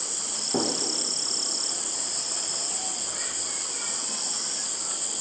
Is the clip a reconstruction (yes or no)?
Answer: yes